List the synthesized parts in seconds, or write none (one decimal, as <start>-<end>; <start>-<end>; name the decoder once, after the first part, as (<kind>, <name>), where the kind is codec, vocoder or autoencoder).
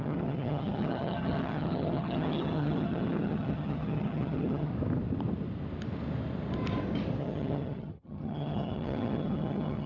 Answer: 0.0-4.7 (vocoder, HiFi-GAN); 7.2-9.9